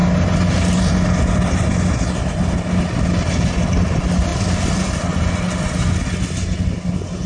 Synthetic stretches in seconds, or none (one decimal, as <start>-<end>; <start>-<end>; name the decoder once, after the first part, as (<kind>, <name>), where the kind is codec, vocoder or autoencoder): 4.3-5.2 (vocoder, BigVGAN v2)